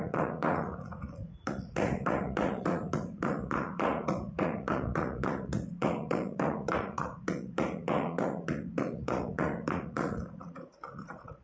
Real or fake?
fake